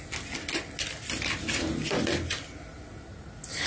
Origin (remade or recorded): recorded